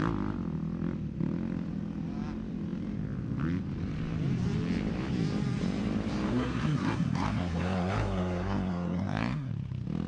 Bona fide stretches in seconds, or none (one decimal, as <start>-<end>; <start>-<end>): 0.0-6.3; 9.5-10.1